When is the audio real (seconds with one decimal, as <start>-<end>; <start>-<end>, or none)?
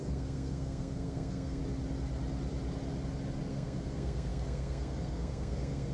1.6-3.5